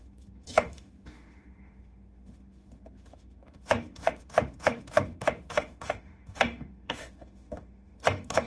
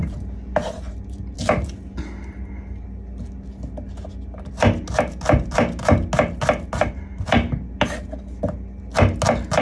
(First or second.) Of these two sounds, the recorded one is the second